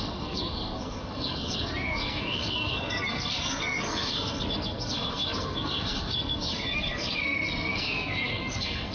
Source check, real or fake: fake